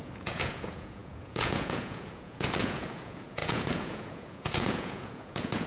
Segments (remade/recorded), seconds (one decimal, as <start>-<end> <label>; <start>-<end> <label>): 0.0-5.7 remade